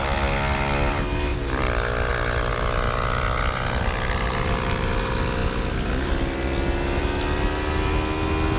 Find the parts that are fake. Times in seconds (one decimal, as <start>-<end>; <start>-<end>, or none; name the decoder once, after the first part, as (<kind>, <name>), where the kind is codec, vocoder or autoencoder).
1.3-2.1 (vocoder, BigVGAN v2)